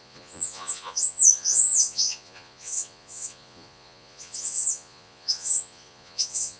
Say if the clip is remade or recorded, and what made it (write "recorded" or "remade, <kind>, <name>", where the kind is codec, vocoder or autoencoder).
remade, vocoder, Vocos